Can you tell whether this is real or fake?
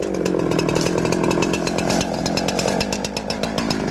real